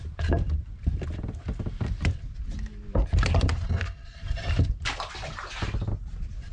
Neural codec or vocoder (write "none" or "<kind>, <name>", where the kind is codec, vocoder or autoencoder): none